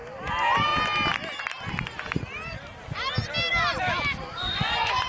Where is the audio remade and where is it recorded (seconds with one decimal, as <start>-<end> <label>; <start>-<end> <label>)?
0.0-4.3 recorded; 4.3-5.1 remade